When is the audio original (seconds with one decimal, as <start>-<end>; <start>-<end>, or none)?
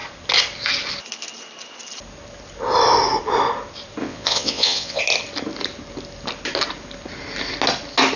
0.0-4.0; 5.0-8.2